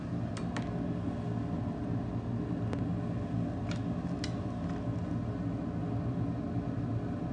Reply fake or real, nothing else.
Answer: real